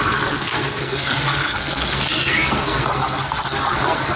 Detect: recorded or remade remade